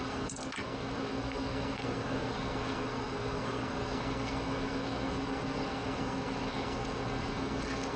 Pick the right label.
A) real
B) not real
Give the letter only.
B